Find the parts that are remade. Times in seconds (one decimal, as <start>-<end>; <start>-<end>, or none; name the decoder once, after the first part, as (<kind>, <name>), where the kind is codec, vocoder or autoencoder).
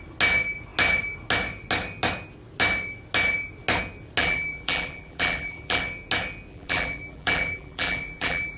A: 4.2-5.8 (vocoder, BigVGAN v2); 6.5-8.6